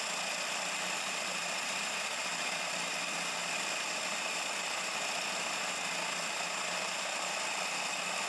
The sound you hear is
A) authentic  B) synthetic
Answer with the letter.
A